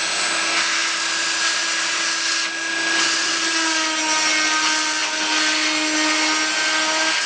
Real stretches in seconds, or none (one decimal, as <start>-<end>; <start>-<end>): 0.0-7.3